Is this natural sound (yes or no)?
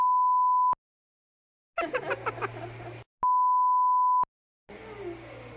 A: yes